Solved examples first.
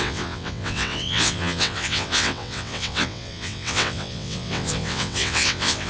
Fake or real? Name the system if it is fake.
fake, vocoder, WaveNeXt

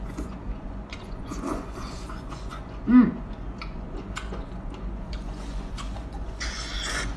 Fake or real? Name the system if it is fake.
fake, vocoder, Vocos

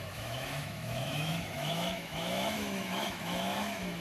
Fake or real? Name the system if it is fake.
fake, autoencoder, DAC-VAE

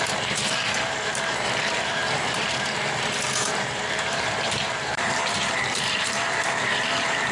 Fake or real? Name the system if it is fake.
fake, vocoder, BigVGAN v2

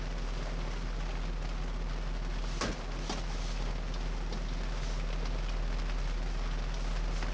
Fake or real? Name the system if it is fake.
real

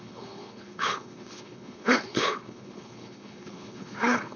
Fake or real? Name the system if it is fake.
fake, codec, HILCodec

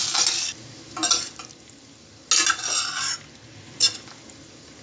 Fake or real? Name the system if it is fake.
real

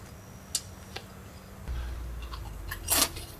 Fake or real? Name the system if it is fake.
real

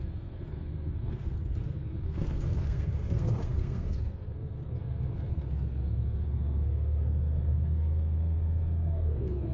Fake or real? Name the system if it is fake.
fake, codec, SNAC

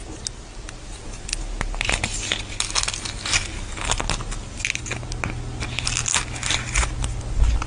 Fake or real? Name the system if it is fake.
real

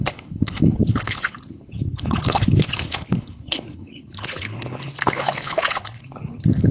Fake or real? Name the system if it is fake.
fake, codec, HILCodec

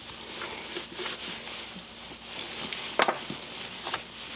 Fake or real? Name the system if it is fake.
real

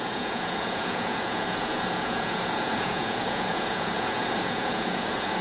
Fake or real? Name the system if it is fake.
fake, vocoder, Vocos